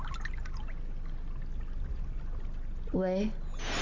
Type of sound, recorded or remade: recorded